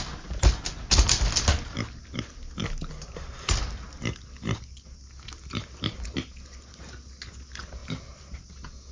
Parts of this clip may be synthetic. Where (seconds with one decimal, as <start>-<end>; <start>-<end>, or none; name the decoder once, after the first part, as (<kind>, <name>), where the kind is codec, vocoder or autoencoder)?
7.8-8.5 (vocoder, BigVGAN v2)